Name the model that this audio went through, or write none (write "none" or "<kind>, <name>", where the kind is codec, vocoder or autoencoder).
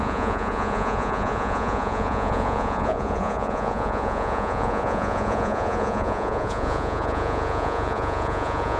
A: vocoder, Vocos